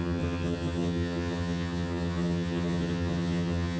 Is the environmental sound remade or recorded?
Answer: remade